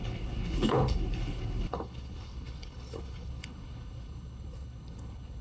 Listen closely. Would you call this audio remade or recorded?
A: remade